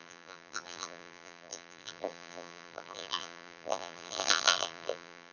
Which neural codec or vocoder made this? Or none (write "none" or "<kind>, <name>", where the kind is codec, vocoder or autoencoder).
vocoder, BigVGAN v2